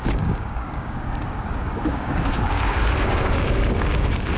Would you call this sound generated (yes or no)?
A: yes